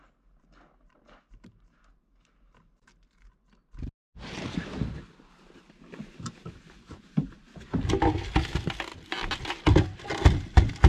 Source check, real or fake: real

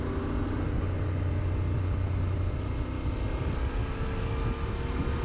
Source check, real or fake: real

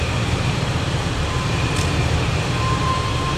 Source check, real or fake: fake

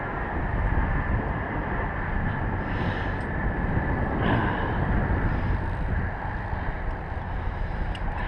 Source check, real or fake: fake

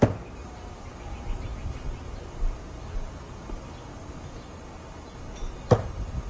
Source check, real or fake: real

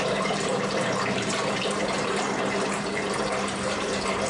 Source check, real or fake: fake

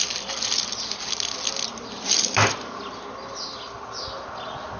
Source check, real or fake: real